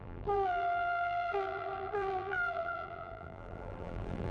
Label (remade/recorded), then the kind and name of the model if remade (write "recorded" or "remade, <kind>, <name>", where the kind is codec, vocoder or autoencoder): remade, vocoder, BigVGAN v2